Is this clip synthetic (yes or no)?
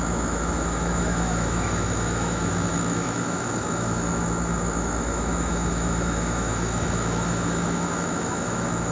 yes